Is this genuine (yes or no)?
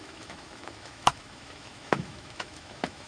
no